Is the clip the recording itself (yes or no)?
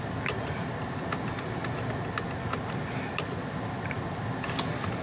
yes